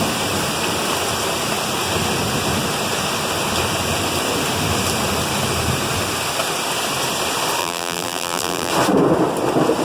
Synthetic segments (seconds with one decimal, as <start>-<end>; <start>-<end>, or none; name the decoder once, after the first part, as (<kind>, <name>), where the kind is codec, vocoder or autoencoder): 7.6-8.7 (vocoder, BigVGAN v2)